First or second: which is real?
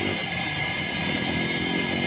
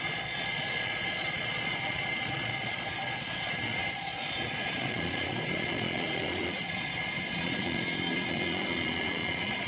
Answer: first